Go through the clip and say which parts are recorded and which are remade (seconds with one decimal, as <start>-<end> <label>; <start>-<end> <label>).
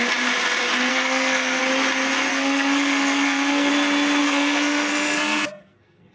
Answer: 0.0-0.9 recorded; 0.9-1.6 remade; 1.6-2.3 recorded; 2.3-3.7 remade; 3.7-4.2 recorded; 4.2-6.1 remade